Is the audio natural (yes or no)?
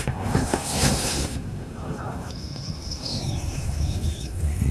no